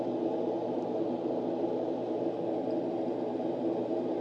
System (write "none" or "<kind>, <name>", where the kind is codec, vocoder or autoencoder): none